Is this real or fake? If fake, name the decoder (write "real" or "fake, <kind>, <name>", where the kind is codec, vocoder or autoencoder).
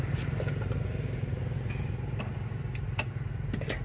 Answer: real